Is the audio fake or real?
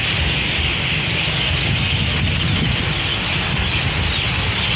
real